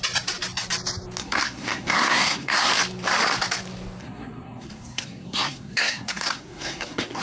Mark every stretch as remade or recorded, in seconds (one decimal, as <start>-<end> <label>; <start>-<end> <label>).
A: 0.0-1.2 recorded; 1.2-2.7 remade; 2.7-4.0 recorded; 4.0-7.2 remade